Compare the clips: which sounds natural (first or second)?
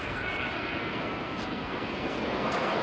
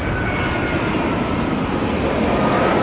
second